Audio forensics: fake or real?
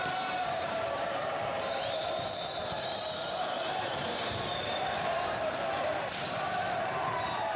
fake